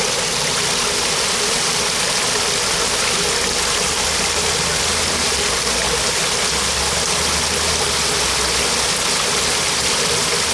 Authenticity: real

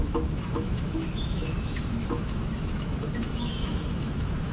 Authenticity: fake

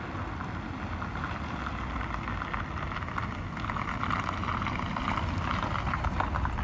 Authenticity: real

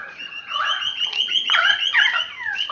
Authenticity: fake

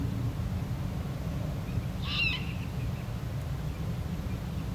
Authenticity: real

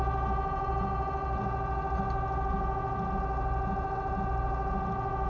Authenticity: real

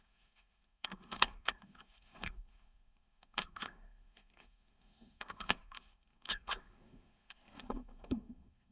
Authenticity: fake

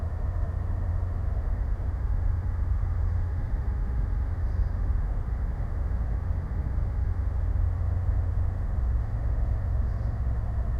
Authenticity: fake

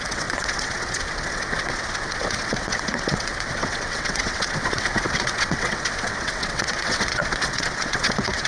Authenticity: fake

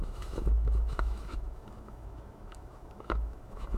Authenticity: fake